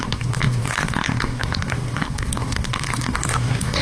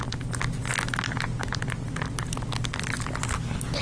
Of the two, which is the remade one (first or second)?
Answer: first